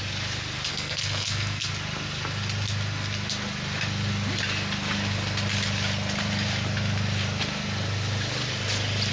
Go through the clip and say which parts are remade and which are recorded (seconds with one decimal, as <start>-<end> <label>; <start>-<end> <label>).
0.0-0.7 recorded; 0.7-1.7 remade; 1.7-9.1 recorded